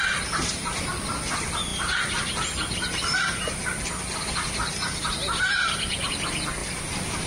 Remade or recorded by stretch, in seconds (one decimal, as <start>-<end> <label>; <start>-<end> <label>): 0.0-6.6 recorded; 6.6-7.3 remade